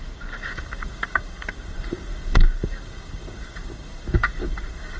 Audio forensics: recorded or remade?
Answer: remade